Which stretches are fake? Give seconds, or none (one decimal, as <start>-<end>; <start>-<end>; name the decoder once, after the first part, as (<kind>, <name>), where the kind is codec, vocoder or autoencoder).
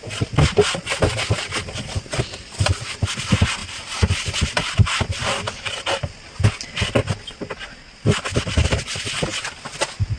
none